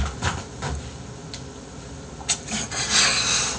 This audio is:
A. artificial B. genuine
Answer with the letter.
B